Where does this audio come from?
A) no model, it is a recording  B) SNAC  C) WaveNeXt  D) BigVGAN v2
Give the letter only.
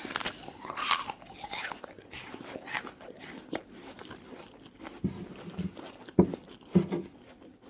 A